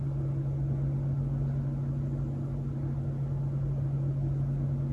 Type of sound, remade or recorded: recorded